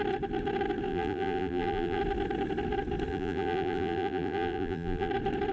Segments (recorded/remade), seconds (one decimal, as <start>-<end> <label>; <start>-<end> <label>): 0.0-0.9 recorded; 0.9-2.0 remade; 2.0-3.1 recorded; 3.1-5.1 remade; 5.1-5.5 recorded